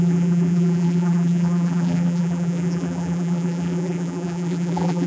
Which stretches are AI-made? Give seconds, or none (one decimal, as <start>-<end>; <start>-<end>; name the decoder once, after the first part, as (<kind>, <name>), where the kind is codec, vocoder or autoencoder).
0.0-5.1 (vocoder, BigVGAN v2)